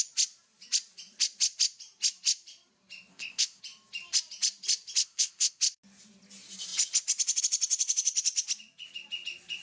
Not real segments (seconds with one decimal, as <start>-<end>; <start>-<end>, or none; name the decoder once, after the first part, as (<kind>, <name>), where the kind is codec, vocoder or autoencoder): 3.1-3.6 (codec, ZipCodec); 5.0-5.6